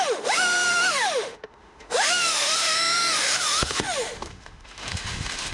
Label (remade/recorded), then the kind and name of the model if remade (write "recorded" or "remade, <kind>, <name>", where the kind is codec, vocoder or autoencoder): remade, autoencoder, DAC-VAE